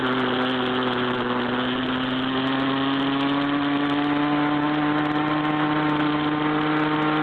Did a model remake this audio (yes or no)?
no